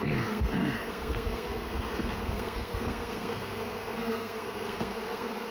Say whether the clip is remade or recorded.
remade